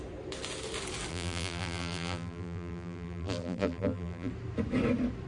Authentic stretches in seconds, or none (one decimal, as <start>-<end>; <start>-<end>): 0.0-1.1; 4.3-5.3